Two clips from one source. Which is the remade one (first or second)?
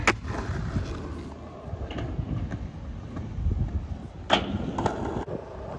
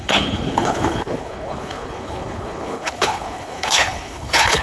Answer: second